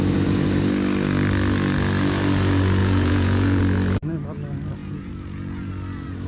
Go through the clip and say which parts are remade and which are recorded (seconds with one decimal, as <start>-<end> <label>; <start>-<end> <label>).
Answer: 0.0-2.8 recorded; 2.8-3.6 remade; 3.6-4.8 recorded; 4.8-5.7 remade; 5.7-6.3 recorded